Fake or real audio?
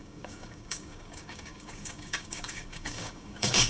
fake